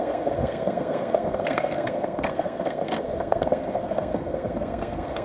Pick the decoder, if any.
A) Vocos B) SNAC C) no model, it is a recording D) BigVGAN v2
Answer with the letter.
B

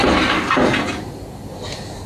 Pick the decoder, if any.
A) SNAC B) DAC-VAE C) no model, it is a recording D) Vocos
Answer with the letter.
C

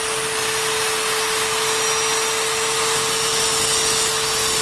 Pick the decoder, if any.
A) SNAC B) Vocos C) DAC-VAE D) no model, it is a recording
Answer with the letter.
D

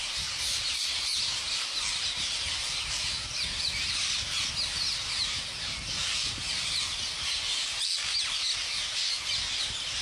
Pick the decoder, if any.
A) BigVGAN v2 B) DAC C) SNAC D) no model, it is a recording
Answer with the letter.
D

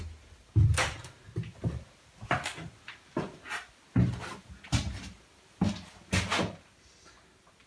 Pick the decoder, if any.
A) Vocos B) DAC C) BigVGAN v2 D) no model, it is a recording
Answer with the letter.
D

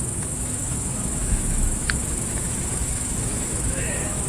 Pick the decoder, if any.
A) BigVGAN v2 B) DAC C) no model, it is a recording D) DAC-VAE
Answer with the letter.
D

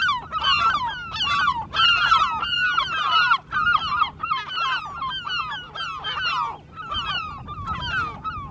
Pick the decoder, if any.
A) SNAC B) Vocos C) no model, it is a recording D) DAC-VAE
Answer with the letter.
C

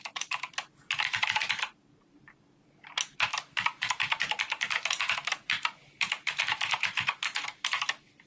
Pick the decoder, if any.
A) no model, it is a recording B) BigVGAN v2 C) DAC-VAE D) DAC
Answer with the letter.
B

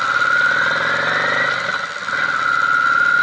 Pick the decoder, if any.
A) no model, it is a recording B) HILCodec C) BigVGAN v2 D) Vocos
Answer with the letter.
A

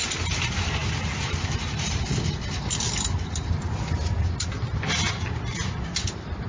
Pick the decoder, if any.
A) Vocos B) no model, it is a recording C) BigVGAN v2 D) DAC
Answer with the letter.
B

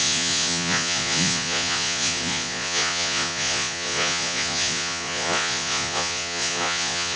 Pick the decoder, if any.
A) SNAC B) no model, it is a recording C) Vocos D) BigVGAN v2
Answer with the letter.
C